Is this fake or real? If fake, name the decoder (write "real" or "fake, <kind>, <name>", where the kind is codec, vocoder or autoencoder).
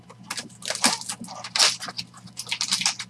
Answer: real